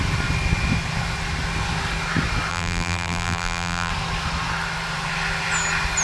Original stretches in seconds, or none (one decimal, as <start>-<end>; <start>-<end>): 0.0-2.5; 3.9-6.0